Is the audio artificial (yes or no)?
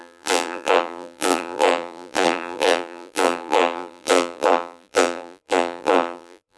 yes